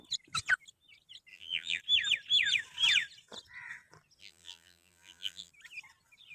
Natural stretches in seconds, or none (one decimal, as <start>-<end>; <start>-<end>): 0.0-1.3; 1.8-4.2; 5.5-6.3